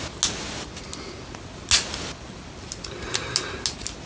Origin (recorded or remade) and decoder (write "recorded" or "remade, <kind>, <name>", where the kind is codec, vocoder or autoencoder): recorded